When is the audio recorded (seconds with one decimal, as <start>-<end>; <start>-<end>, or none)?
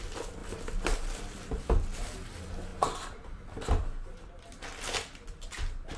0.0-6.0